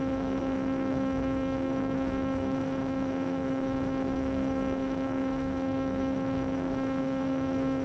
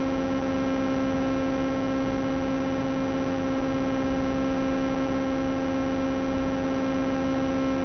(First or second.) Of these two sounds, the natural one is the second